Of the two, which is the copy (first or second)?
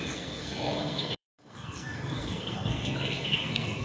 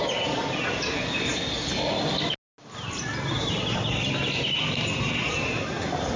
first